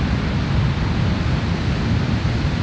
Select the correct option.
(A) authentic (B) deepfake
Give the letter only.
A